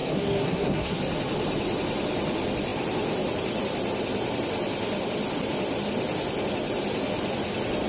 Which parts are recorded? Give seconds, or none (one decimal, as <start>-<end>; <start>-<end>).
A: 1.0-7.9